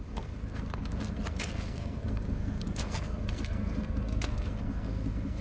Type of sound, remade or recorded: remade